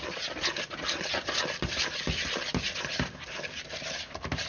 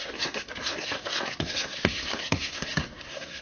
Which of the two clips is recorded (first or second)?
first